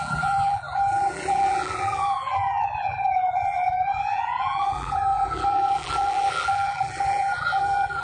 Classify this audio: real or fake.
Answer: fake